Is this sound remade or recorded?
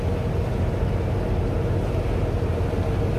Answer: recorded